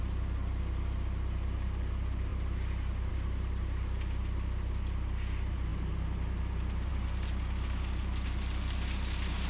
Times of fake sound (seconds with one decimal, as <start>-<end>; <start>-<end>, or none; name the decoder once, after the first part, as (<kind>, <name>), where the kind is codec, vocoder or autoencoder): none